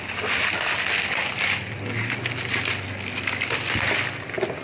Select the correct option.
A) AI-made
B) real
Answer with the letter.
B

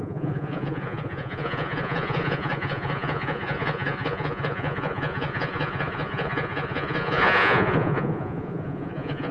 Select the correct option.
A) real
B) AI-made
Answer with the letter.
B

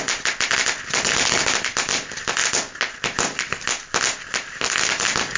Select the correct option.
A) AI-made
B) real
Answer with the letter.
B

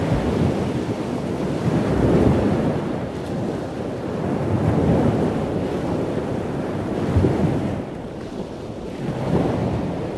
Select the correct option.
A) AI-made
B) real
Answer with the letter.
B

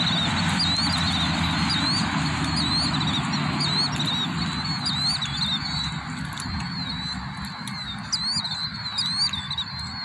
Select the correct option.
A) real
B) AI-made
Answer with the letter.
A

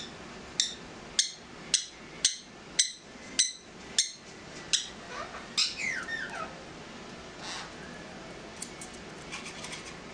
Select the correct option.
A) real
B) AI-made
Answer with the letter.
A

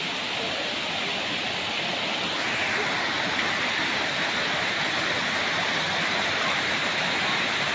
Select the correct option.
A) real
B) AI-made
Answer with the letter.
A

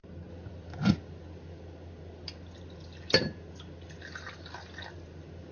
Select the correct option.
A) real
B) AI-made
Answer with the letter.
A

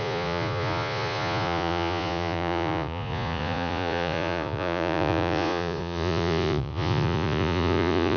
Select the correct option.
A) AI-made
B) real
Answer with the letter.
A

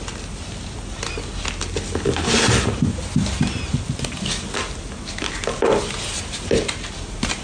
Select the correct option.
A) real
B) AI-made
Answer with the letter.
A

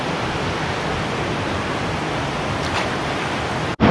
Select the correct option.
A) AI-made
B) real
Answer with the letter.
B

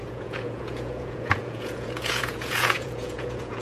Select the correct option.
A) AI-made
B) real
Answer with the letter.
A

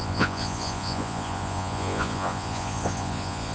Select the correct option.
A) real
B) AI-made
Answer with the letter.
B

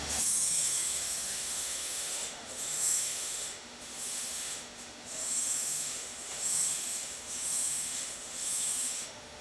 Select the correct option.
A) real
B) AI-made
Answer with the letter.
B